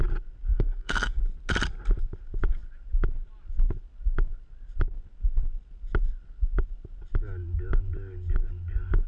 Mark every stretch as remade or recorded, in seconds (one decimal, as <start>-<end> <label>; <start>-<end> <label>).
0.0-0.5 recorded; 0.5-1.2 remade; 1.2-9.1 recorded